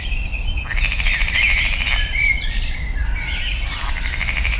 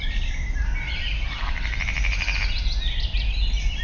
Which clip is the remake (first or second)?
first